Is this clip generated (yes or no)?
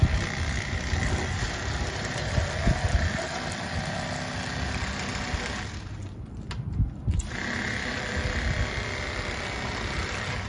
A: no